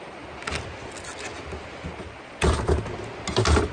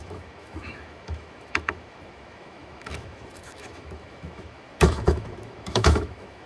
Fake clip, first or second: second